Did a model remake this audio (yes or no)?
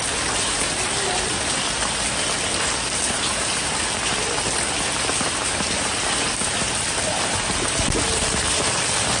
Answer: no